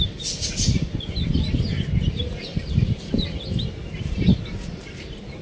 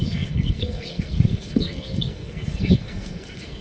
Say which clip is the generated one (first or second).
second